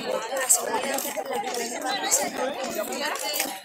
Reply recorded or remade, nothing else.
remade